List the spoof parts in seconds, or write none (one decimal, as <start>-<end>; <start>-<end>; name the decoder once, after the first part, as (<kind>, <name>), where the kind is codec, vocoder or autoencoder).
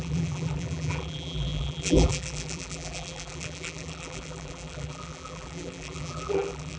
0.0-6.8 (vocoder, BigVGAN v2)